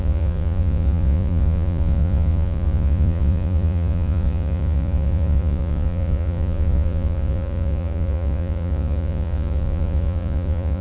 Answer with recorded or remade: remade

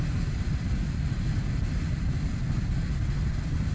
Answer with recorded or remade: recorded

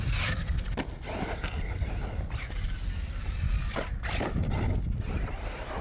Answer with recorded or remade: recorded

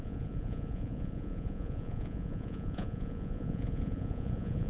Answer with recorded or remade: remade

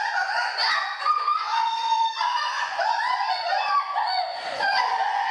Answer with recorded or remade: remade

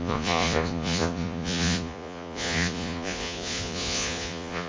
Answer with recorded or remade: remade